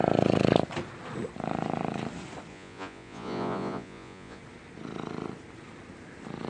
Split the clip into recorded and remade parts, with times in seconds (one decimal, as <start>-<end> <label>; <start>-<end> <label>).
0.0-2.5 recorded; 2.5-4.4 remade; 4.4-6.5 recorded

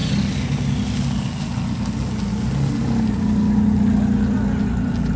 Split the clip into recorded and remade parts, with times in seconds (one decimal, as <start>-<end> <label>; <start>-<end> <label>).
0.0-5.2 recorded

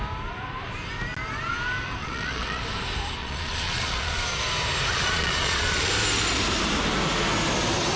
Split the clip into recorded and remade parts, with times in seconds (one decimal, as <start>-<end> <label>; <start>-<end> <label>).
0.0-2.0 recorded; 2.0-2.6 remade; 2.6-3.2 recorded; 3.2-4.2 remade; 4.2-4.9 recorded; 4.9-5.9 remade; 5.9-8.0 recorded

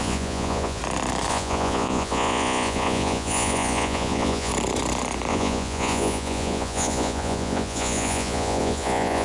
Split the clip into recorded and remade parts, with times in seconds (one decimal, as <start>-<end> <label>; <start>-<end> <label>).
0.0-0.8 remade; 0.8-1.3 recorded; 1.3-4.5 remade; 4.5-5.3 recorded; 5.3-9.2 remade

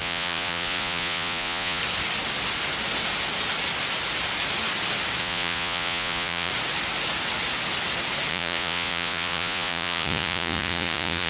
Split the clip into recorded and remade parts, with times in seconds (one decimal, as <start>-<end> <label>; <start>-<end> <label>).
0.0-1.8 remade; 1.8-5.2 recorded; 5.2-6.5 remade; 6.5-8.3 recorded; 8.3-11.3 remade

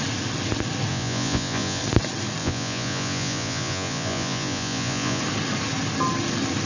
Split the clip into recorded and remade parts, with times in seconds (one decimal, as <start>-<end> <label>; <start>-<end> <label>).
0.0-0.9 recorded; 0.9-1.8 remade; 1.8-2.4 recorded; 2.4-5.2 remade; 5.2-6.7 recorded

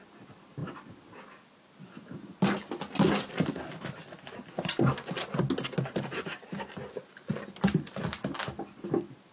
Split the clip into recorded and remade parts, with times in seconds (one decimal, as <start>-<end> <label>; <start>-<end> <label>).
0.0-9.3 recorded